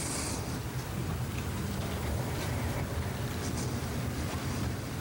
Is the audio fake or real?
fake